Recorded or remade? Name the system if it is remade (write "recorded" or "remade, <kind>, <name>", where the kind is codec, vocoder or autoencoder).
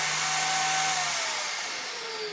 recorded